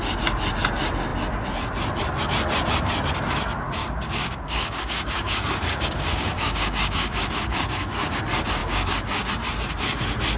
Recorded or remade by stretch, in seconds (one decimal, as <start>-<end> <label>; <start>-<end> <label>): 0.0-3.8 recorded; 3.8-8.2 remade; 8.2-8.6 recorded; 8.6-9.3 remade; 9.3-10.4 recorded